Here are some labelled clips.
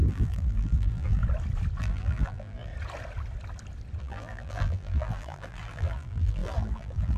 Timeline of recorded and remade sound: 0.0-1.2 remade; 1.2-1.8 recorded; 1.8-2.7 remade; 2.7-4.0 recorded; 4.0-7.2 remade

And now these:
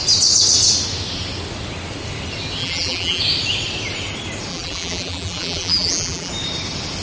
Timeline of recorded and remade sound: 0.0-2.6 recorded; 2.6-3.2 remade; 3.2-4.5 recorded; 4.5-6.3 remade; 6.3-7.0 recorded

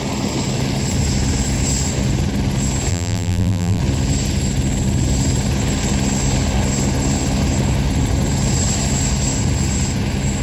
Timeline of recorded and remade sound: 0.0-2.9 recorded; 2.9-3.8 remade; 3.8-10.4 recorded

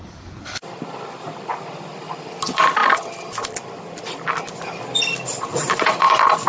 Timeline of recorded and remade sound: 0.0-5.5 recorded; 5.5-6.1 remade; 6.1-6.5 recorded

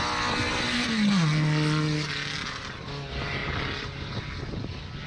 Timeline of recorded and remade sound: 0.0-5.1 recorded

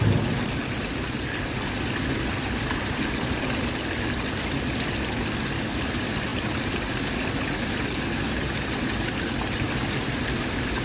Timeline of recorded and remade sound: 0.0-10.8 remade